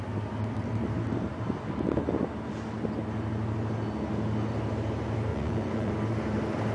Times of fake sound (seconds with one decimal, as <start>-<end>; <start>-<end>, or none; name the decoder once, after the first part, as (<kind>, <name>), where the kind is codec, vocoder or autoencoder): 5.3-5.9 (vocoder, Vocos)